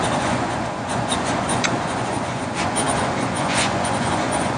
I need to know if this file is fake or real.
fake